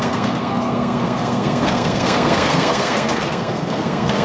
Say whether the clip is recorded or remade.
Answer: remade